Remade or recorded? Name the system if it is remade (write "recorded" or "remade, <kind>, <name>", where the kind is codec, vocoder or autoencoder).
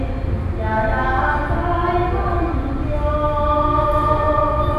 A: recorded